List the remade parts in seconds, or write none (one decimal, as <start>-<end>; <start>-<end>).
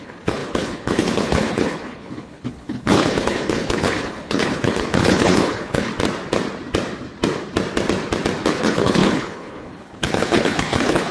0.0-5.9; 8.5-11.1